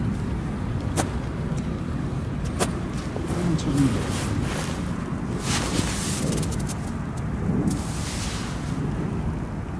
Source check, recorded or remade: recorded